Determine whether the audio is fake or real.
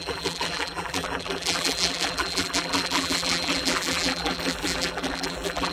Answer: fake